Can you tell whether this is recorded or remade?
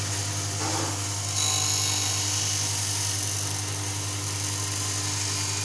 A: recorded